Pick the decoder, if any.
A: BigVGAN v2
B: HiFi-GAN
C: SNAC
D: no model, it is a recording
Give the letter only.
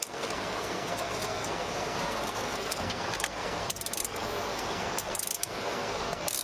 C